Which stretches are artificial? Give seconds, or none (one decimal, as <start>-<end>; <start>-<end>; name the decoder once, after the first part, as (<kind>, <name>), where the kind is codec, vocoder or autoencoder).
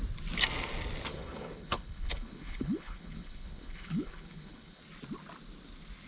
1.1-4.8 (codec, HILCodec)